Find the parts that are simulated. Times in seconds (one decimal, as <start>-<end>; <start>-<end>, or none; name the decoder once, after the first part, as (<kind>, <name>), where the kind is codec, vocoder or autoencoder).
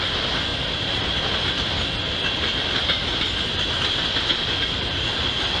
0.5-1.2 (vocoder, BigVGAN v2)